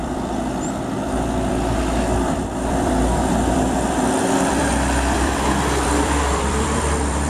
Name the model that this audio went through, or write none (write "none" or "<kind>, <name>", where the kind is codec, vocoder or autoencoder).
vocoder, BigVGAN v2